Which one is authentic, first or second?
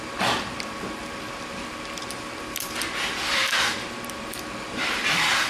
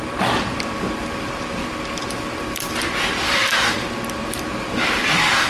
first